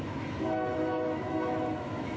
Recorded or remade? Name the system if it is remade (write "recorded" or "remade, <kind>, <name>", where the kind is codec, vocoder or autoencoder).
remade, autoencoder, DAC-VAE